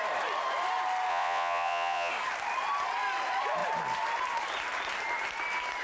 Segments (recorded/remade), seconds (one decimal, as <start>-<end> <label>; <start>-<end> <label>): 0.0-1.1 recorded; 1.1-2.1 remade; 2.1-5.8 recorded